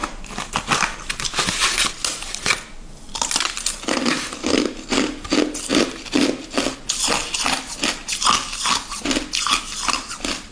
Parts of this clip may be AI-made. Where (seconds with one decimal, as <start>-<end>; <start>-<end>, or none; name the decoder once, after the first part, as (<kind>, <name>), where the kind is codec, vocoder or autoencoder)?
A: 5.7-6.3 (vocoder, BigVGAN v2)